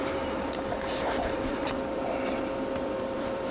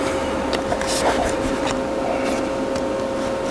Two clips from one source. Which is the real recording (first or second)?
second